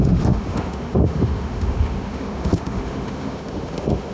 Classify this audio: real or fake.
fake